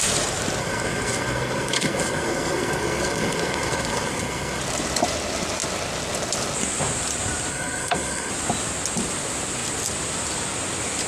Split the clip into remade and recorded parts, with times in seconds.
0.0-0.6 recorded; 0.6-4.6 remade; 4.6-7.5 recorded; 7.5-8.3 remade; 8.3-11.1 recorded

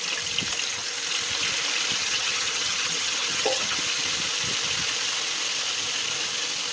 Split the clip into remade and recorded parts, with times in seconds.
0.0-2.0 recorded; 2.0-3.8 remade; 3.8-6.7 recorded